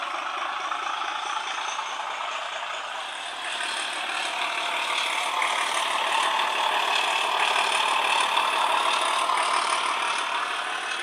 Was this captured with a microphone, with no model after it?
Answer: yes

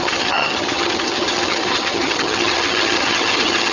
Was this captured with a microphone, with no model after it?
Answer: no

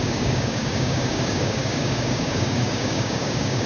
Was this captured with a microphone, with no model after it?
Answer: no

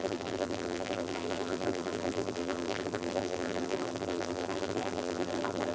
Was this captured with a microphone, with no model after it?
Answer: no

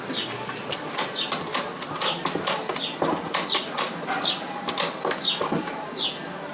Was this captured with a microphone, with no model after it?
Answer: yes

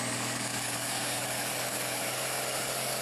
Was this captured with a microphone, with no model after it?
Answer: no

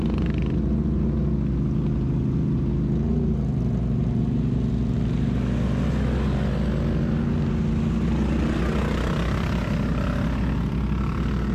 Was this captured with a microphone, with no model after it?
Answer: yes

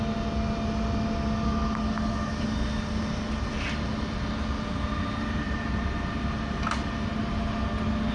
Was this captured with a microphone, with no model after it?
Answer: yes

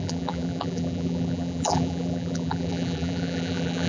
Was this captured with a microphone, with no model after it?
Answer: no